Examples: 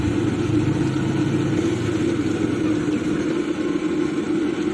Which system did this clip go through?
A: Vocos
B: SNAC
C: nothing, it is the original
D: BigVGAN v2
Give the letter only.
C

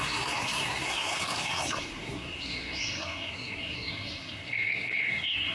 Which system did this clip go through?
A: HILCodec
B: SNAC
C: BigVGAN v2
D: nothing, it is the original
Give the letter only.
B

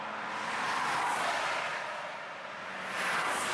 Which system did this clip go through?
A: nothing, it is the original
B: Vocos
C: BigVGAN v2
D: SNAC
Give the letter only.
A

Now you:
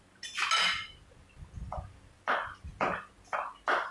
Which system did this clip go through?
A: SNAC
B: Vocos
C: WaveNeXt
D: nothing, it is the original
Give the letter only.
D